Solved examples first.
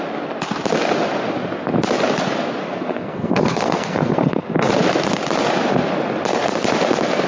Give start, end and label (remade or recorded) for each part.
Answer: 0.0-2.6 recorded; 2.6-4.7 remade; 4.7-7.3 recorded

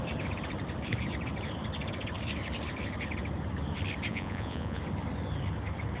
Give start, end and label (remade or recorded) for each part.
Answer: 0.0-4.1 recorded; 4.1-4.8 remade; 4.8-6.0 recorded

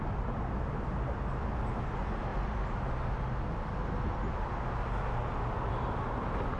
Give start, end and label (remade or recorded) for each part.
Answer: 0.0-6.6 recorded

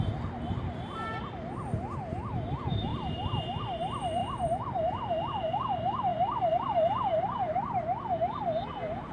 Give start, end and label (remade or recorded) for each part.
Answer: 0.0-4.2 recorded; 4.2-5.2 remade; 5.2-9.1 recorded

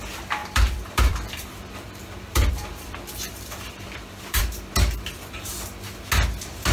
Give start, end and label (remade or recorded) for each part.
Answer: 0.0-0.4 recorded; 0.4-4.4 remade; 4.4-6.7 recorded

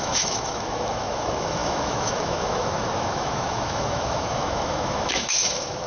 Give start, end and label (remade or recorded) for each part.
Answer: 0.0-5.9 remade

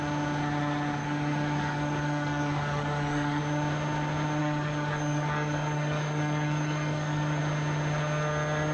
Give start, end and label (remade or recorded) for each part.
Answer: 0.0-1.0 recorded; 1.0-3.4 remade; 3.4-4.4 recorded; 4.4-7.4 remade; 7.4-8.7 recorded

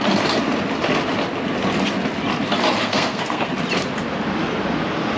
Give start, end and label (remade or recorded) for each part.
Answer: 0.0-2.8 recorded; 2.8-3.5 remade; 3.5-5.2 recorded